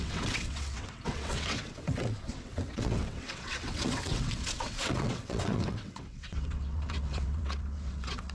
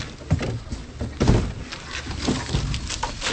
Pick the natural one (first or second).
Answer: second